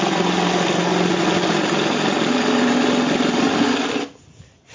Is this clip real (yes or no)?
yes